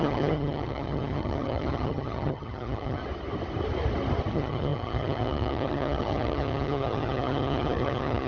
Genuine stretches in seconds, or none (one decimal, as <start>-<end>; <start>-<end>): 3.0-4.3